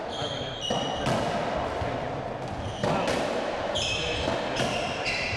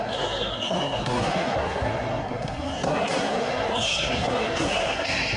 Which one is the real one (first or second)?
first